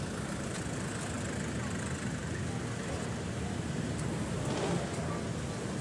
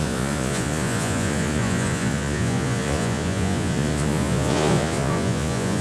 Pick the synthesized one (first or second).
second